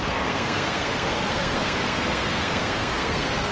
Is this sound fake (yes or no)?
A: yes